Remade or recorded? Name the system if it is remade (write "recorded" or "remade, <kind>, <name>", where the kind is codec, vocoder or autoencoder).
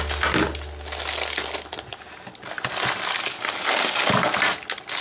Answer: recorded